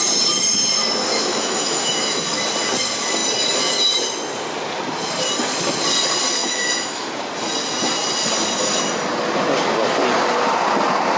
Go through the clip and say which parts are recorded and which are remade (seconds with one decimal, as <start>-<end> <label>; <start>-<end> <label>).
0.0-1.1 recorded; 1.1-2.3 remade; 2.3-6.4 recorded; 6.4-7.1 remade; 7.1-11.2 recorded